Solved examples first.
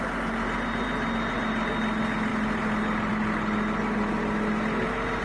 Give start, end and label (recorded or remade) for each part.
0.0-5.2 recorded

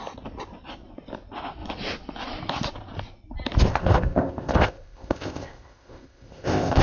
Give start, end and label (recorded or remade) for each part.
0.0-3.7 recorded; 3.7-6.8 remade

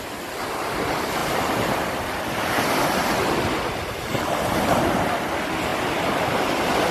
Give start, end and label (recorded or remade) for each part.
0.0-6.9 recorded

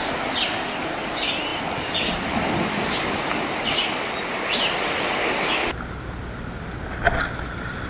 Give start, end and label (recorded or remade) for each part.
0.0-7.9 recorded